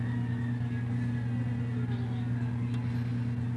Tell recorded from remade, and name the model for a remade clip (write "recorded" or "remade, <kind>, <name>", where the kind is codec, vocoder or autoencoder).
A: recorded